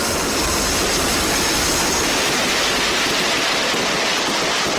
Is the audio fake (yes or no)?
no